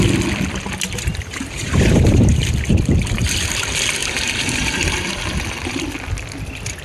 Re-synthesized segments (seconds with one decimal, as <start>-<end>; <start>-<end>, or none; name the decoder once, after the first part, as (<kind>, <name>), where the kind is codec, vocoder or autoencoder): 1.1-2.8 (vocoder, BigVGAN v2); 4.0-5.1